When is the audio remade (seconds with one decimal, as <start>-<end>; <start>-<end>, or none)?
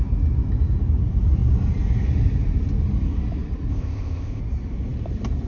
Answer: 3.7-4.4